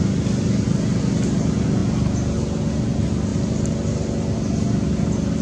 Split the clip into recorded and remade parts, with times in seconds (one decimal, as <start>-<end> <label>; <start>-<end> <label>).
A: 0.0-5.4 recorded